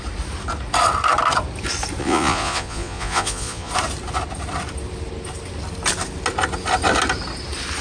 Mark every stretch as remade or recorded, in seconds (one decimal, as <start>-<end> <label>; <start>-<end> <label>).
0.0-2.0 recorded; 2.0-3.7 remade; 3.7-7.8 recorded